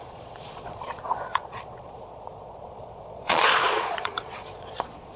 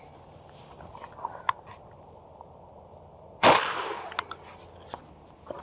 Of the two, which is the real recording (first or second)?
second